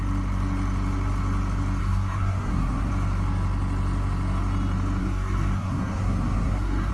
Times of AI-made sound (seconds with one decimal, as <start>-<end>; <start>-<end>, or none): 1.8-2.9; 5.0-6.9